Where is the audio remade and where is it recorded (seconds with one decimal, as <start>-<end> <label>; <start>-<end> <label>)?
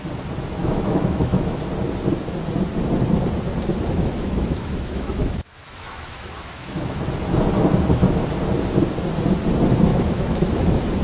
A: 0.0-0.6 recorded; 0.6-1.6 remade; 1.6-3.7 recorded; 3.7-7.0 remade; 7.0-9.9 recorded; 9.9-10.6 remade; 10.6-11.0 recorded